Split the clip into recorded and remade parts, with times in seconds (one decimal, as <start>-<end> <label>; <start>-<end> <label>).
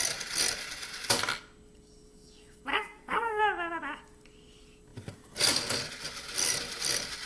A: 0.0-2.7 recorded; 2.7-3.4 remade; 3.4-7.3 recorded